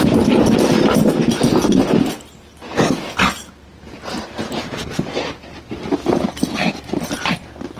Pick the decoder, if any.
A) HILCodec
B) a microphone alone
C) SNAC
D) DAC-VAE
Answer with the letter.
B